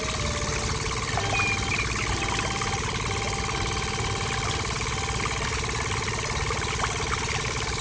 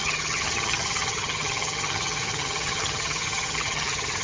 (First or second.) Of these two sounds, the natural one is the first